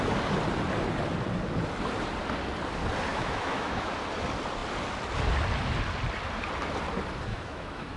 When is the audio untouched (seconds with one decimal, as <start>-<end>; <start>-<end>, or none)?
0.0-3.1; 3.9-7.3